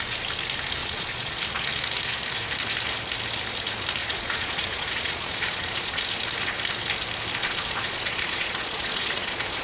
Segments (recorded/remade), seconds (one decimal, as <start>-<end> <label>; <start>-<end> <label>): 0.0-0.8 recorded; 0.8-1.4 remade; 1.4-4.0 recorded; 4.0-6.0 remade; 6.0-7.4 recorded; 7.4-9.6 remade